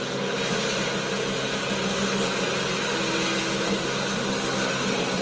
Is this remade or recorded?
recorded